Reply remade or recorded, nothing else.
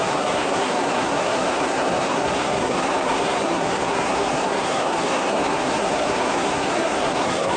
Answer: remade